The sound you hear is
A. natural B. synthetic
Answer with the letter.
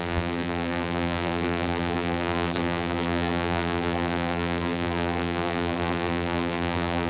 B